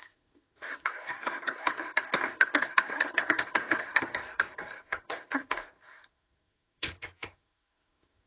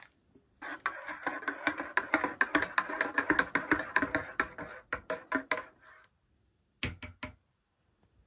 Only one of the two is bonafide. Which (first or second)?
second